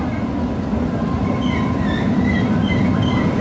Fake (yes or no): no